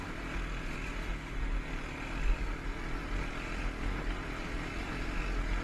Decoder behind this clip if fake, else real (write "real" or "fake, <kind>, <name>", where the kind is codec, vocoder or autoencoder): real